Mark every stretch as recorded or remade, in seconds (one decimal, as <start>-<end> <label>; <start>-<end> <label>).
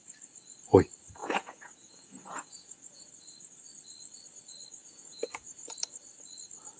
0.0-1.2 recorded; 1.2-3.1 remade; 3.1-4.8 recorded; 4.8-5.7 remade; 5.7-6.8 recorded